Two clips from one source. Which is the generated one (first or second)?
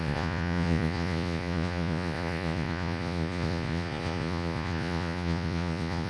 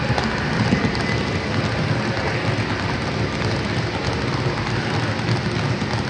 first